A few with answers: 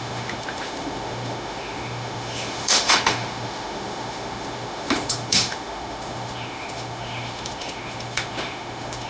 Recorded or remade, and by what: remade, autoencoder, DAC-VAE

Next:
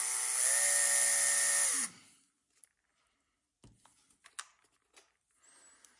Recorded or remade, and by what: recorded